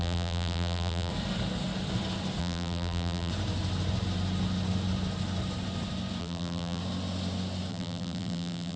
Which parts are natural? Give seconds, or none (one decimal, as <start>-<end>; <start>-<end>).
1.1-2.4; 3.3-6.2; 6.8-7.7